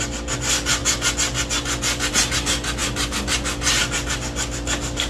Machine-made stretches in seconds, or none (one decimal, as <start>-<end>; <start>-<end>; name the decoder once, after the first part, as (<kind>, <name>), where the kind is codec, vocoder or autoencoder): none